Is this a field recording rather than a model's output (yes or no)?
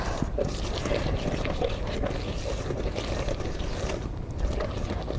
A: yes